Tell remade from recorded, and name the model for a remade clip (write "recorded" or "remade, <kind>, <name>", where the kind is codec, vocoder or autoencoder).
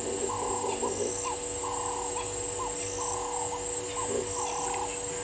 recorded